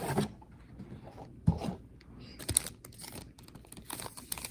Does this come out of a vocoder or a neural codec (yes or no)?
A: no